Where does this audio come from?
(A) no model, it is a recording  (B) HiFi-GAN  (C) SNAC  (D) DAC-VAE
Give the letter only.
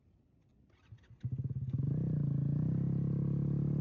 A